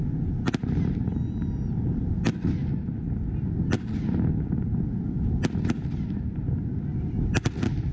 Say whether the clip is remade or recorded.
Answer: recorded